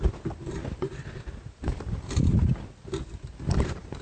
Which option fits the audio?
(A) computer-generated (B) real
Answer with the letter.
A